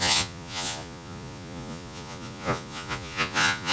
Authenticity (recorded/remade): remade